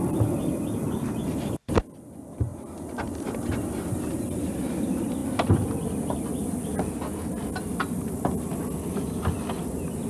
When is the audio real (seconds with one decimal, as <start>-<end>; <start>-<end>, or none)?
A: 5.2-7.6; 8.5-10.1